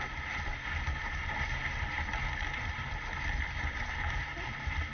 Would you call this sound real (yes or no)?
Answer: yes